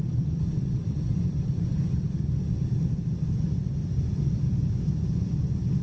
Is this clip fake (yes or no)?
no